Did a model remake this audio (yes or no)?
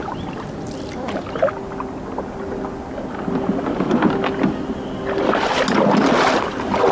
no